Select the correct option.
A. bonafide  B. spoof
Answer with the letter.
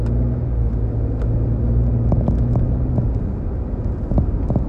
A